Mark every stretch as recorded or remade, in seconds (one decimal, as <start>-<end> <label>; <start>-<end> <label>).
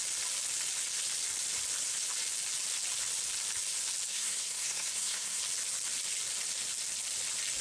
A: 0.0-4.1 recorded; 4.1-5.4 remade; 5.4-7.6 recorded